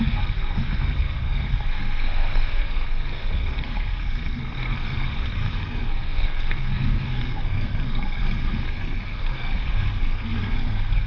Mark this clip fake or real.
fake